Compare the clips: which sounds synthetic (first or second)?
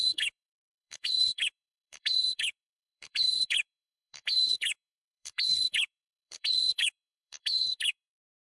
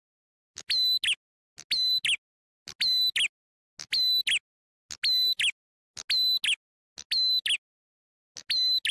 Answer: first